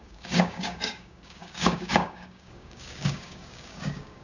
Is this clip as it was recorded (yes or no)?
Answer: no